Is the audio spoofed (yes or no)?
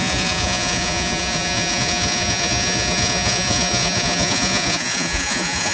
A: yes